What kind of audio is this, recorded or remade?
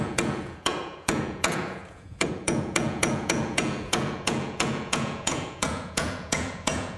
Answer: remade